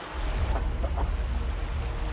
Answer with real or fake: real